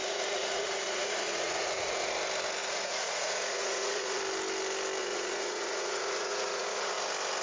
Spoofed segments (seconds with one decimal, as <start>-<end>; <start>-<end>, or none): 0.0-2.1; 2.6-4.2; 5.0-6.9